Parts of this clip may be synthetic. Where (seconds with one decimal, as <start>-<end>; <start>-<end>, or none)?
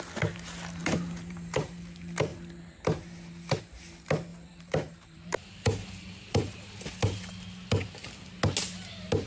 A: 0.8-1.8; 4.3-6.5